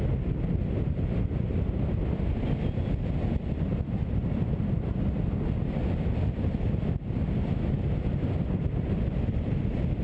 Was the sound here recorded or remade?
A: recorded